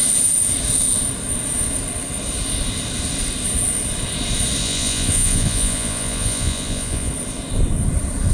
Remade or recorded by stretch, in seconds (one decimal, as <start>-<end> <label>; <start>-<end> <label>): 0.0-4.6 recorded; 4.6-7.1 remade; 7.1-8.3 recorded